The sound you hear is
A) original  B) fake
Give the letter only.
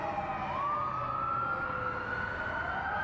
A